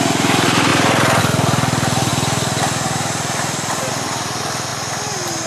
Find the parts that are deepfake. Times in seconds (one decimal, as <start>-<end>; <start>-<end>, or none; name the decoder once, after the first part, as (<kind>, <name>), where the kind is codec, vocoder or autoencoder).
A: none